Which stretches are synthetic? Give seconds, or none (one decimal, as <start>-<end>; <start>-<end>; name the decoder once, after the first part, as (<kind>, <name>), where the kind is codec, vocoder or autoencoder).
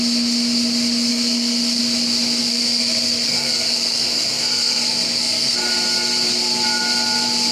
1.1-1.8 (codec, SNAC); 2.4-5.7